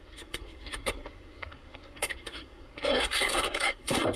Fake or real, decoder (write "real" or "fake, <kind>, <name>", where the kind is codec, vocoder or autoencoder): fake, codec, SNAC